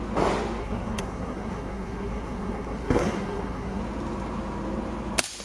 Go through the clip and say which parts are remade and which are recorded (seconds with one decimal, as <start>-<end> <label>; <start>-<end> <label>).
0.0-0.6 recorded; 0.6-3.8 remade; 3.8-5.4 recorded